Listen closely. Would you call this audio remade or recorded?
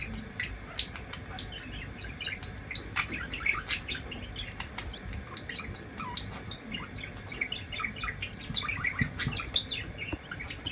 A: recorded